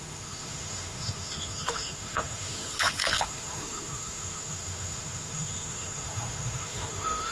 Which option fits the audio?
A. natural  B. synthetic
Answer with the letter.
B